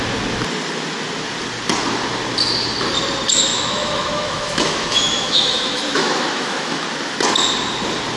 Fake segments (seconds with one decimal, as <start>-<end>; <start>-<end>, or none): 3.5-6.8